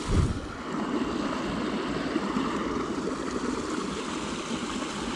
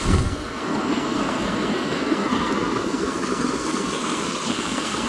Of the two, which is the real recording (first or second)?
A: first